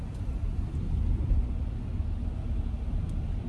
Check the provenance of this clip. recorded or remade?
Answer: recorded